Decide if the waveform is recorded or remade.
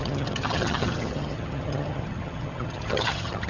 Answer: remade